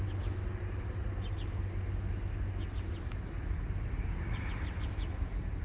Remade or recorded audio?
recorded